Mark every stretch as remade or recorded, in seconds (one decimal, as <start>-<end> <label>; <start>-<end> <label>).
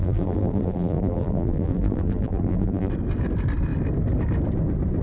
0.0-2.9 remade; 2.9-5.0 recorded